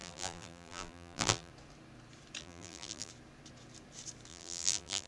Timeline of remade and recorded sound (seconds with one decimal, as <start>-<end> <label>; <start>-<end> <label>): 0.0-1.5 remade; 1.5-2.4 recorded; 2.4-3.1 remade; 3.1-4.3 recorded; 4.3-5.1 remade